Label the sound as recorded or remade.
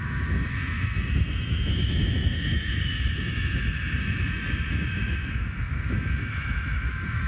remade